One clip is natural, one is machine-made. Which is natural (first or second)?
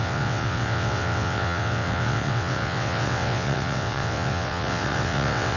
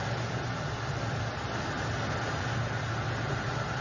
second